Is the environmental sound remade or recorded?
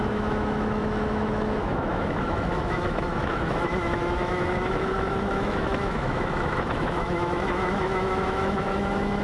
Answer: remade